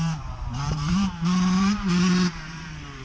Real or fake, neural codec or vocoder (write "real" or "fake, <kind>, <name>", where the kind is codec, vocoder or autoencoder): fake, vocoder, BigVGAN v2